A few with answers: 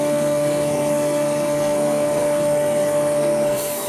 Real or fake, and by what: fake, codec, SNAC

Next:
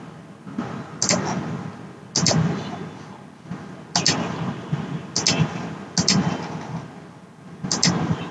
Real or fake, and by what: real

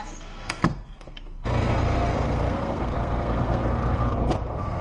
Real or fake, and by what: fake, codec, SNAC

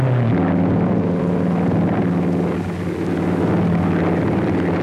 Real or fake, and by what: real